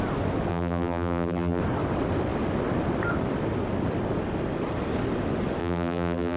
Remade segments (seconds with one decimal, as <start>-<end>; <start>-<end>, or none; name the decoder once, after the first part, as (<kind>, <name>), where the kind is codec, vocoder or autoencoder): 0.5-1.6 (vocoder, BigVGAN v2); 5.6-6.4